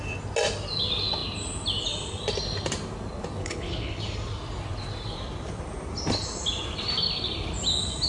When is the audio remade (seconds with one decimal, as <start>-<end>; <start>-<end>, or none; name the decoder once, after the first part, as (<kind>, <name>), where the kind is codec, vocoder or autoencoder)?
3.4-4.0 (codec, HILCodec)